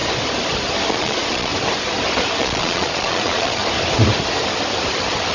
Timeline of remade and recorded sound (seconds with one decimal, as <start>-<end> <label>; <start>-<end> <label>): 0.0-0.9 recorded; 0.9-1.5 remade; 1.5-2.4 recorded; 2.4-3.6 remade; 3.6-5.3 recorded

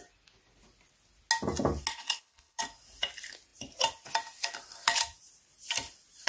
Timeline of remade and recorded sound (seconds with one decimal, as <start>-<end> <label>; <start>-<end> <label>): 0.0-1.9 recorded; 1.9-2.6 remade; 2.6-6.3 recorded